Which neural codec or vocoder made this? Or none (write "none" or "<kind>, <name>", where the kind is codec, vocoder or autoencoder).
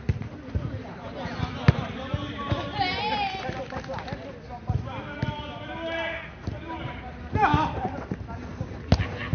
none